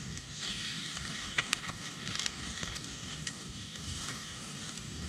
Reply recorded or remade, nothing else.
remade